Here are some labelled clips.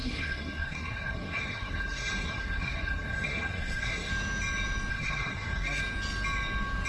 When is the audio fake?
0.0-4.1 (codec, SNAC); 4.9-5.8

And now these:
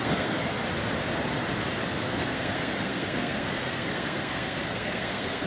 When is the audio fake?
0.0-0.6 (codec, SNAC); 1.9-5.5

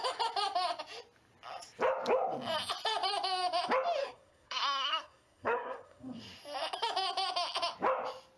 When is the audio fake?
4.0-6.2 (codec, SNAC)

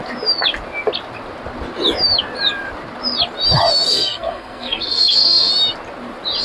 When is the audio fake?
3.9-5.5 (codec, SNAC)

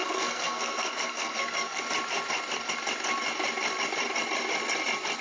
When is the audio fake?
0.0-1.8 (codec, SNAC)

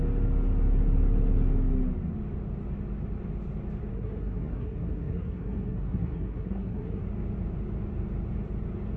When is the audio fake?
3.9-7.0 (codec, SNAC)

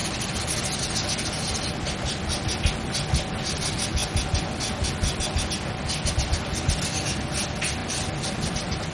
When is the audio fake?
none

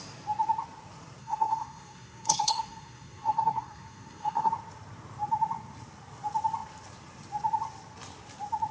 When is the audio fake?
1.2-4.5 (codec, SNAC)